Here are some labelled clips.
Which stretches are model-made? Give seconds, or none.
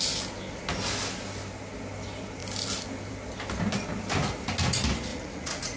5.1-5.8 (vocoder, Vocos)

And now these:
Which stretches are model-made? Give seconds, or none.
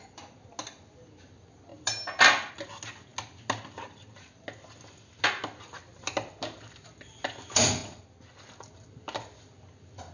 none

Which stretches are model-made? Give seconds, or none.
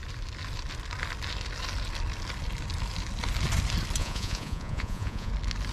4.0-5.3 (vocoder, Vocos)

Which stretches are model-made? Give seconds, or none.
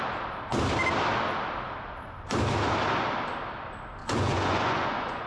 4.0-5.3 (vocoder, Vocos)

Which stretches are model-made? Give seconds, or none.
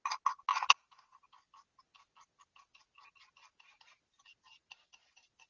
none